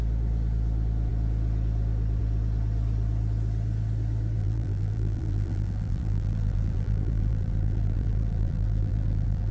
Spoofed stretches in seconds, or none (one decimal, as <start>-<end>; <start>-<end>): 4.4-9.5